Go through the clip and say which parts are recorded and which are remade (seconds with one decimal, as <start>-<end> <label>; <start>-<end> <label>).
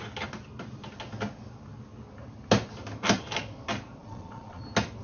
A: 0.0-4.0 recorded; 4.0-4.6 remade; 4.6-5.0 recorded